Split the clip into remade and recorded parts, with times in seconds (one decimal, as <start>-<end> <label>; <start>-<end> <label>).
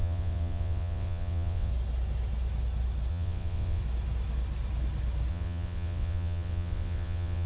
0.0-1.7 remade; 1.7-3.1 recorded; 3.1-3.8 remade; 3.8-5.3 recorded; 5.3-7.5 remade